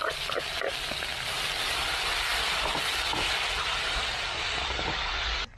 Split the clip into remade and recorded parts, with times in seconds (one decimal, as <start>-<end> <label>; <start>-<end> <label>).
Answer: 0.0-5.6 recorded